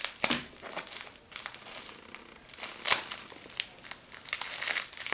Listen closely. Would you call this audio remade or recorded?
recorded